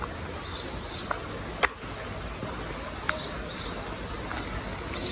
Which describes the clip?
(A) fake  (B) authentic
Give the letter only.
B